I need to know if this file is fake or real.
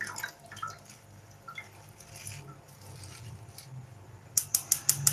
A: real